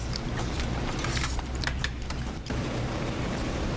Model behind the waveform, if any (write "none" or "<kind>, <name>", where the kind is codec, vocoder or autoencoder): vocoder, BigVGAN v2